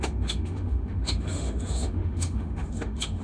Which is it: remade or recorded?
remade